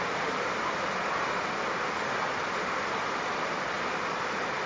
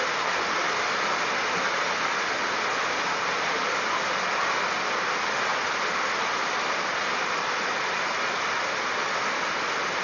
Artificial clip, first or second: first